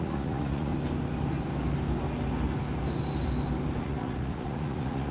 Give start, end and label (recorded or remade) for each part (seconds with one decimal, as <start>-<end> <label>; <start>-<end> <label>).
0.0-0.7 remade; 0.7-3.8 recorded; 3.8-5.1 remade

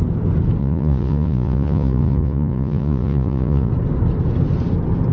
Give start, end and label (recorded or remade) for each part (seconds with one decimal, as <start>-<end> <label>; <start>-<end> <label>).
0.0-0.6 recorded; 0.6-3.7 remade; 3.7-5.1 recorded